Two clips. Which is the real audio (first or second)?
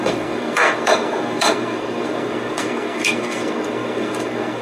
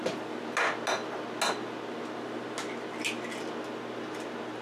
second